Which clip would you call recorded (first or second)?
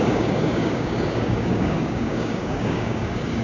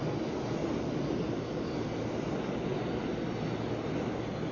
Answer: second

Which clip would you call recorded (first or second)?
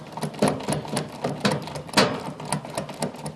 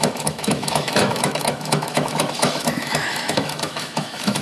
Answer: first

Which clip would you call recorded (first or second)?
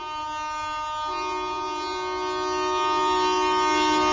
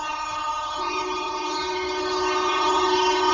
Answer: first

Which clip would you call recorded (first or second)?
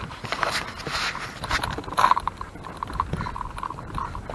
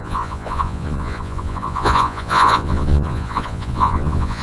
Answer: first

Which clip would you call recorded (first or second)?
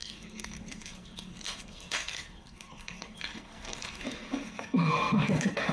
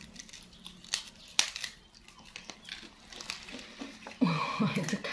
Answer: second